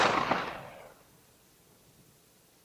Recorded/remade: remade